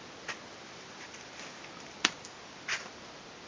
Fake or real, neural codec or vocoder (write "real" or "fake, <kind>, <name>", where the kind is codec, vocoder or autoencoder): real